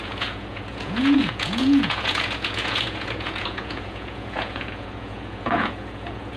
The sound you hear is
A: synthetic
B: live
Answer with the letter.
A